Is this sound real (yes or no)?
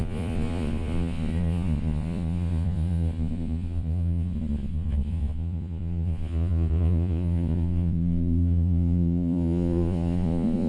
no